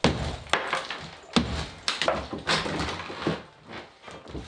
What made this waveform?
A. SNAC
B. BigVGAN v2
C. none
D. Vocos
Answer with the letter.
C